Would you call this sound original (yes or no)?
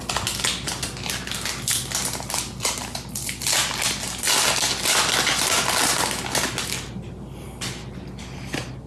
yes